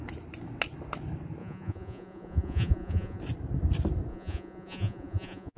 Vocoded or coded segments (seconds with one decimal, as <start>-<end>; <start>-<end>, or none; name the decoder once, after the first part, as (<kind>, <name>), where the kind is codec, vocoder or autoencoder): 1.4-3.2 (vocoder, Vocos); 4.1-5.6